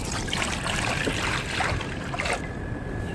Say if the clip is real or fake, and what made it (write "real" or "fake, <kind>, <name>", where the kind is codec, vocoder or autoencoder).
real